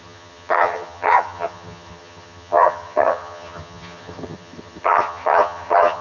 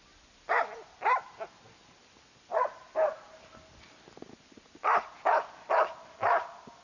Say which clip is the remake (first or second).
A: first